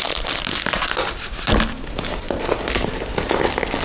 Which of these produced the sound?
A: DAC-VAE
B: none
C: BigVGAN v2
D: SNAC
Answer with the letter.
B